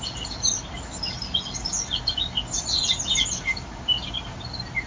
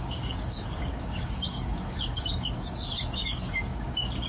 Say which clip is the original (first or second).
first